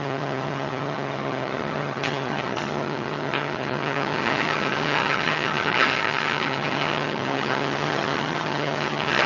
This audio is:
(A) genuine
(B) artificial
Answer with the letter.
B